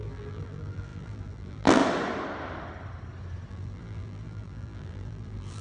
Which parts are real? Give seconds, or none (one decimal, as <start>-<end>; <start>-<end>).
1.8-3.5